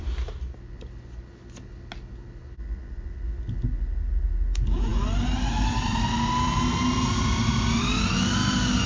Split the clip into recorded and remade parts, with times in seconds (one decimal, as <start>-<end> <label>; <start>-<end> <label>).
0.0-8.9 recorded